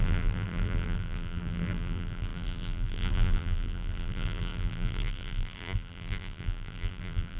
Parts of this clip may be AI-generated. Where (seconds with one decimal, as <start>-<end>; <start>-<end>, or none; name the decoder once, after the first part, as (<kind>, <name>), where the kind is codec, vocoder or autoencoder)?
0.0-7.4 (vocoder, BigVGAN v2)